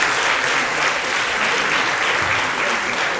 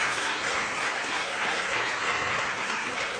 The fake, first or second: second